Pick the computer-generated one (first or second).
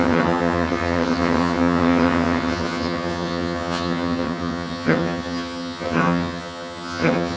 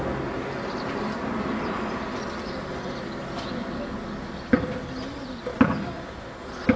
first